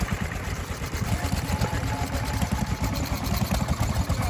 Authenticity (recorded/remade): recorded